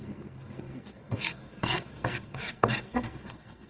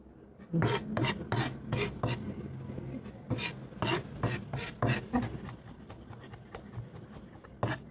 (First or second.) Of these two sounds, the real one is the second